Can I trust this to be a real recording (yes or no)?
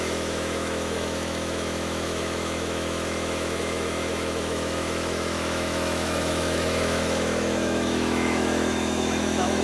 no